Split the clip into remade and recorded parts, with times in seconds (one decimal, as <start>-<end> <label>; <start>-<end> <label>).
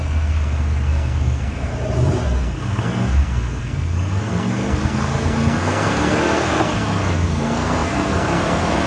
0.0-1.7 remade; 1.7-2.4 recorded; 2.4-8.9 remade